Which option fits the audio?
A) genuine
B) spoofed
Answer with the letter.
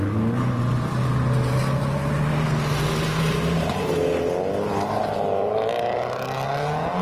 A